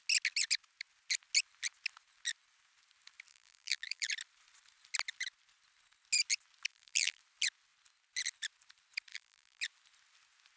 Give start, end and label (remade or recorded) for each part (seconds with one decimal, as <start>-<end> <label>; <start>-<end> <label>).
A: 0.0-3.3 recorded; 3.3-4.1 remade; 4.1-6.7 recorded; 6.7-7.2 remade; 7.2-9.1 recorded; 9.1-9.6 remade; 9.6-10.6 recorded